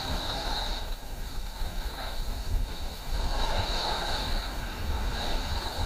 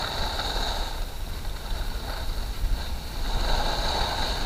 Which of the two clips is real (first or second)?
second